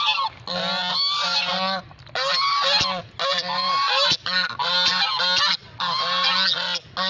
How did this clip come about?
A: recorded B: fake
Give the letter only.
A